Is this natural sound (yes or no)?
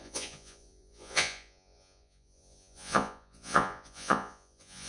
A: no